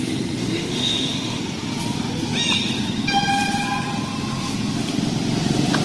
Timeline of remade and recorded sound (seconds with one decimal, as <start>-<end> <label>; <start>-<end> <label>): 0.0-0.4 recorded; 0.4-1.4 remade; 1.4-5.8 recorded